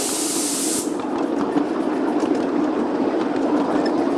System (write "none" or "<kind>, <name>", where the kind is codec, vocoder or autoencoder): none